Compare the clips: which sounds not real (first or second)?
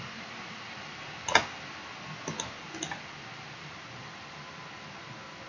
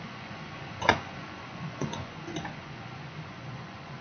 second